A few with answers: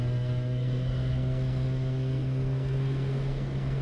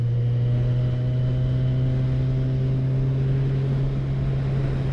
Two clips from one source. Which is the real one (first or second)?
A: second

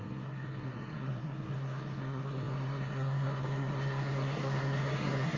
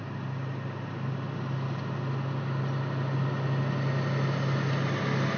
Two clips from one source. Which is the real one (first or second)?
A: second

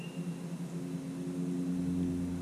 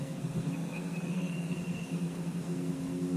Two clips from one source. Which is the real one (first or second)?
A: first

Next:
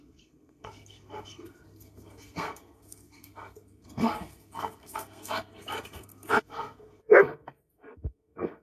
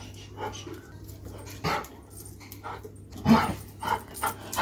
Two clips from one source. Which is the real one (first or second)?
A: second